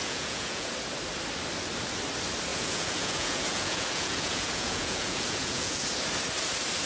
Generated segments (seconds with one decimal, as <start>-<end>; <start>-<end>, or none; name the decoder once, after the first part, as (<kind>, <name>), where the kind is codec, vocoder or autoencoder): 0.0-0.7 (vocoder, Vocos); 2.5-5.8